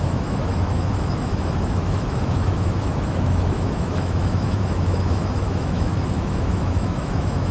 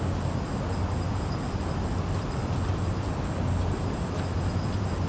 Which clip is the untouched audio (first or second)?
second